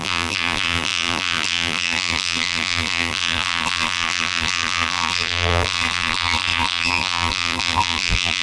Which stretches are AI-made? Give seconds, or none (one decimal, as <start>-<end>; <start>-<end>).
0.0-8.4